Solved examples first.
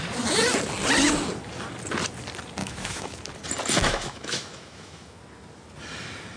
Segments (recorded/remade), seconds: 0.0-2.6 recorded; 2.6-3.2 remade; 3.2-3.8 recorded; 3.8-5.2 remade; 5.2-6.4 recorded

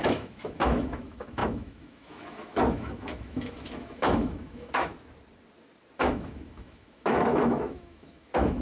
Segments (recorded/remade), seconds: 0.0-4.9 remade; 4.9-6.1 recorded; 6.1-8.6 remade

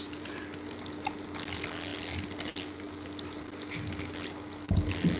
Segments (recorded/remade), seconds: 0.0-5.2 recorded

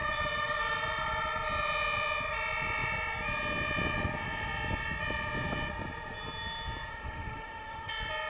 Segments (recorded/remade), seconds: 0.0-6.9 recorded; 6.9-7.9 remade; 7.9-8.3 recorded

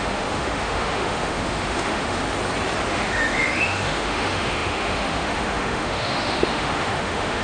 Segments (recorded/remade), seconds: 0.0-2.2 remade; 2.2-2.9 recorded; 2.9-7.4 remade

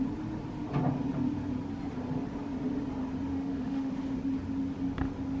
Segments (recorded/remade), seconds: 0.0-3.3 recorded; 3.3-3.9 remade; 3.9-5.4 recorded

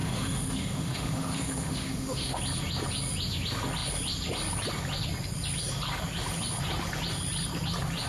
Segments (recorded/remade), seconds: 0.0-2.4 remade; 2.4-8.1 recorded

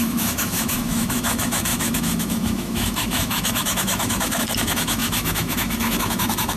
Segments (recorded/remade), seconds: 0.0-6.6 remade